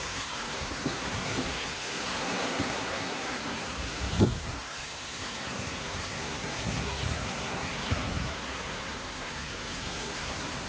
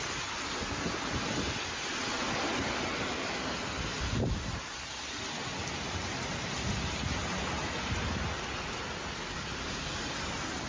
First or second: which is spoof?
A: first